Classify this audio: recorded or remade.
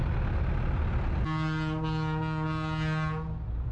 recorded